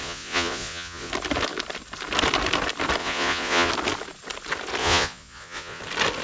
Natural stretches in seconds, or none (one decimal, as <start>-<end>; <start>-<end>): 1.1-3.0; 3.7-4.8; 5.8-6.2